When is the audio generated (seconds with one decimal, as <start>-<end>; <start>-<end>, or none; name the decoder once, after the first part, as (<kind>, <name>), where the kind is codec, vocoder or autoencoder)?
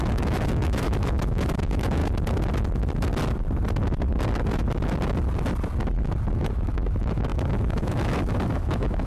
0.0-2.0 (autoencoder, DAC-VAE); 6.3-9.1